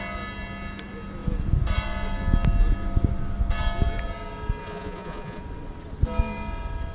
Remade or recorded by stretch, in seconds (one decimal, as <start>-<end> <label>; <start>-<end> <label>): 0.0-4.6 recorded; 4.6-5.4 remade; 5.4-6.9 recorded